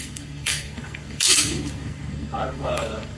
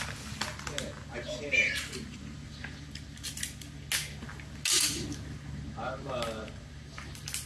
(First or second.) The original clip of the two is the second